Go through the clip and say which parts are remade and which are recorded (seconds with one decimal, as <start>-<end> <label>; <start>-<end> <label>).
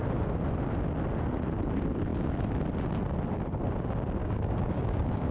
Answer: 0.0-4.2 recorded; 4.2-5.3 remade